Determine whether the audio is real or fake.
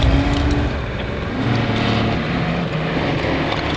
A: real